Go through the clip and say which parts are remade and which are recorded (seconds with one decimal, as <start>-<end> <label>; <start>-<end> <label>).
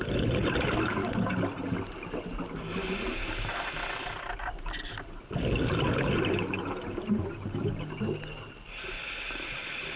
0.0-10.0 recorded